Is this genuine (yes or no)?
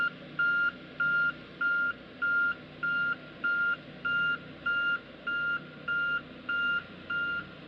yes